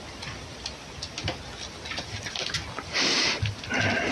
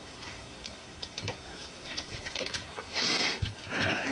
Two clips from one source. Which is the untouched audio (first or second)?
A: first